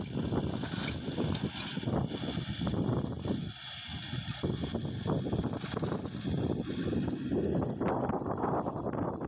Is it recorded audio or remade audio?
recorded